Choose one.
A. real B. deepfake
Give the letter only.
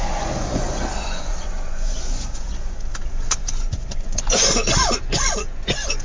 B